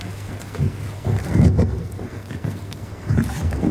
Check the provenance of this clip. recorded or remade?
remade